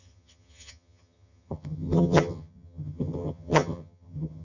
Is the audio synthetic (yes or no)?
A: yes